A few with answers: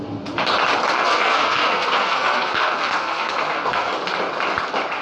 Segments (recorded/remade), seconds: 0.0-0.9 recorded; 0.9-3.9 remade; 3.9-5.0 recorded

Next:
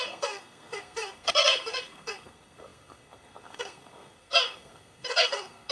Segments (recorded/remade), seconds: 0.0-5.7 remade

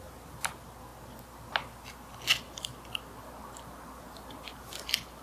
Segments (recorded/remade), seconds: 0.0-5.2 recorded

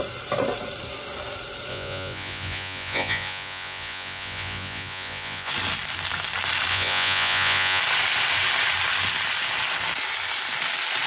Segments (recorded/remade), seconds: 0.0-1.7 recorded; 1.7-5.5 remade; 5.5-6.7 recorded; 6.7-7.8 remade; 7.8-11.1 recorded